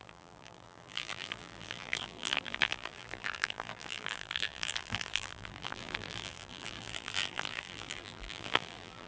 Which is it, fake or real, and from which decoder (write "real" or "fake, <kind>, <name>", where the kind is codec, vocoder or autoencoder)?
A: fake, vocoder, BigVGAN v2